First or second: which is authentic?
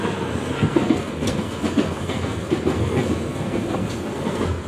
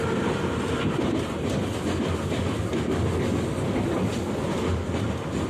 second